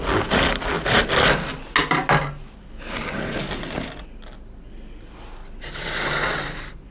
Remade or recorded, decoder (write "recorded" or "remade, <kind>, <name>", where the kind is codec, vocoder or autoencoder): recorded